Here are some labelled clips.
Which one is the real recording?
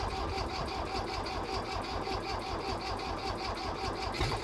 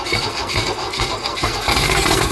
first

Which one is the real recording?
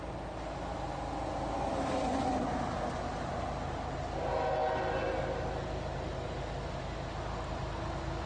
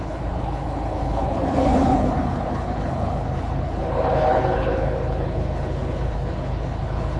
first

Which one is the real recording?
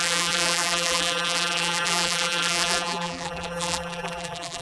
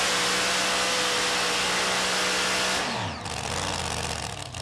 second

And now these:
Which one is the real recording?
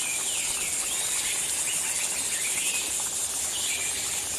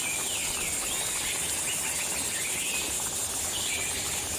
second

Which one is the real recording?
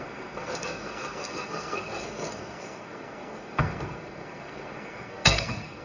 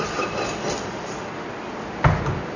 second